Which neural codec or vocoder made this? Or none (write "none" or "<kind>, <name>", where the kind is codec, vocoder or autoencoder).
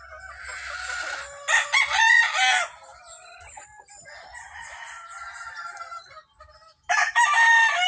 none